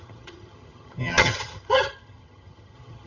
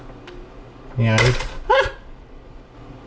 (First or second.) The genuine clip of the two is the second